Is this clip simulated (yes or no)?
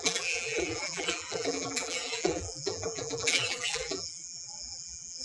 yes